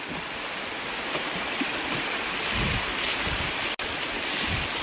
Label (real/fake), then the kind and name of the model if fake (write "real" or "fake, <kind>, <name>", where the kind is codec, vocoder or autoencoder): real